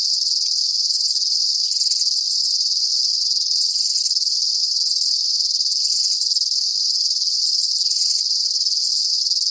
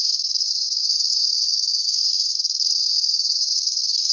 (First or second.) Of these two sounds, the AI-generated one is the second